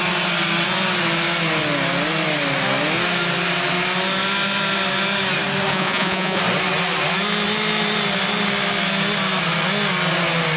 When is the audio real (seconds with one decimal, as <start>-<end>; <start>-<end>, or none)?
0.0-5.7; 6.4-10.6